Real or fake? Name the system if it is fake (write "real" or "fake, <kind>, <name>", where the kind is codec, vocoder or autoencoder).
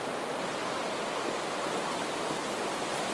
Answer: real